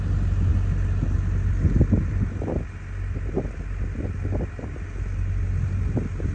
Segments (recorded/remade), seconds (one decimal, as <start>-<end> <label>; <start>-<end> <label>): 0.0-6.3 recorded